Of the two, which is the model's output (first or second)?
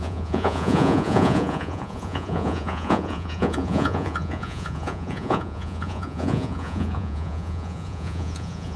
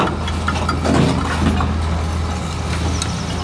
first